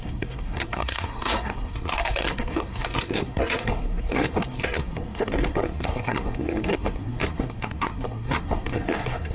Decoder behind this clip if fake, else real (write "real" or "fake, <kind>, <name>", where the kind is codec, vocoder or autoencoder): fake, codec, SNAC